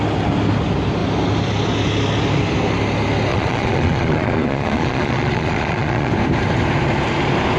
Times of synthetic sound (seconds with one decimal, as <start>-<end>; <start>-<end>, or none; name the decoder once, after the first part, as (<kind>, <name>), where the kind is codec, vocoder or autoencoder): 3.3-6.1 (vocoder, Vocos)